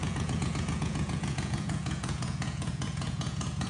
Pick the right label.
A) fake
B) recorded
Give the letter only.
A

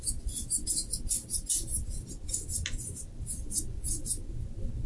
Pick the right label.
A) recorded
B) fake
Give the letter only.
A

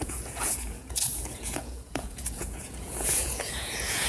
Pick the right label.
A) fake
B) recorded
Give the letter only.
A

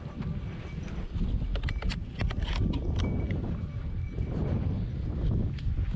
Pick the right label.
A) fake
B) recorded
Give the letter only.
B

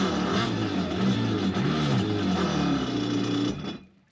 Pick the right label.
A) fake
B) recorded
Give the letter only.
B